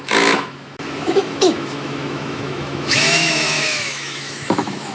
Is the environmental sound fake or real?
fake